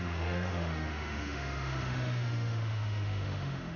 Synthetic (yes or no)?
yes